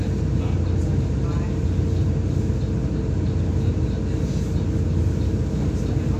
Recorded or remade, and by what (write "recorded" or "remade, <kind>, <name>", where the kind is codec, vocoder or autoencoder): recorded